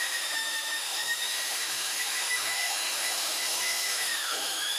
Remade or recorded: remade